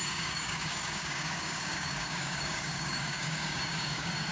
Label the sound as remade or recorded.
remade